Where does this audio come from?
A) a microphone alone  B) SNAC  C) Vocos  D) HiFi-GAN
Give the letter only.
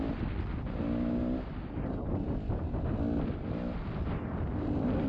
A